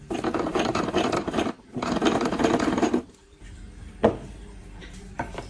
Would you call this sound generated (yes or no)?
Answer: yes